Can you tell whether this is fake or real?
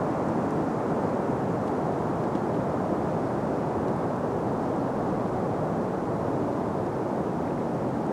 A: real